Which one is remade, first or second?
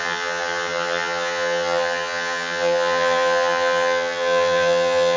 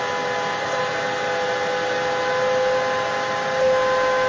first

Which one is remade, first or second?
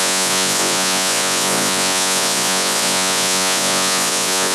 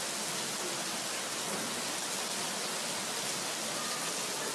first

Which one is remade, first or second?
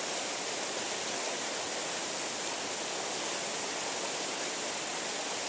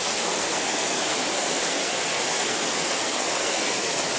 second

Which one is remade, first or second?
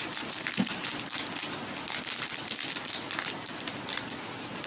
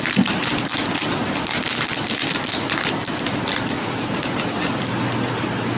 second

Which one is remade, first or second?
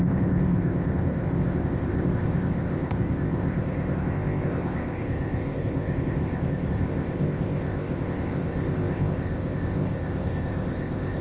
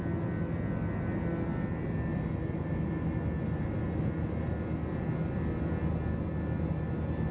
first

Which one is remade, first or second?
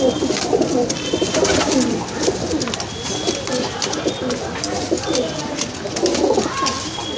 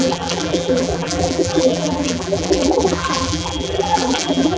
second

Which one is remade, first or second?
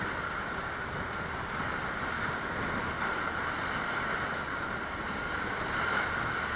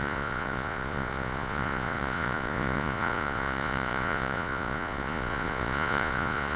second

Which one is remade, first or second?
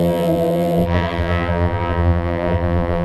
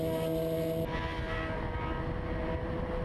first